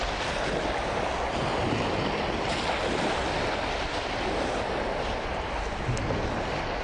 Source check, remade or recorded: recorded